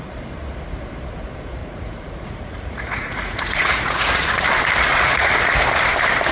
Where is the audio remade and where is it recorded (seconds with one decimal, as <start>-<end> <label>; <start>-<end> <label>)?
0.0-1.6 recorded; 1.6-4.3 remade; 4.3-4.9 recorded; 4.9-5.6 remade; 5.6-6.3 recorded